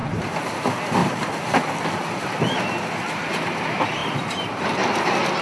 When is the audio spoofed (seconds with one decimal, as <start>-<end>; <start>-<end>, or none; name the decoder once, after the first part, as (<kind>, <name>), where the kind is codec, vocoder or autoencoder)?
0.0-0.5 (vocoder, BigVGAN v2); 1.0-1.6; 4.0-5.0